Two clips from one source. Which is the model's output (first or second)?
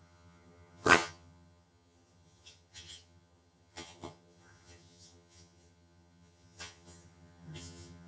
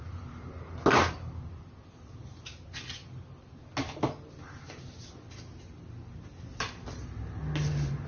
first